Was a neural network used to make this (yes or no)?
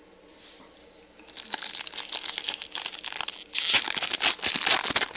no